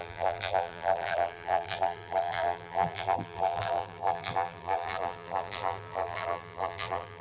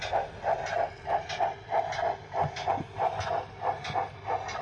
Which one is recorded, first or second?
second